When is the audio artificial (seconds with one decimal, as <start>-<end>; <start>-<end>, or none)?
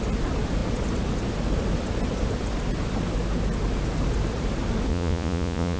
4.9-5.8